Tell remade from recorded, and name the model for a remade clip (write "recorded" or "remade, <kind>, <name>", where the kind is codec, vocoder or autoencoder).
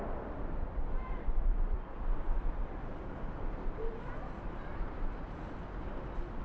recorded